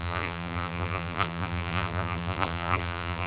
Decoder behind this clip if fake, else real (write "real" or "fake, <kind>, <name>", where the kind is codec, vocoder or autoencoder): fake, vocoder, BigVGAN v2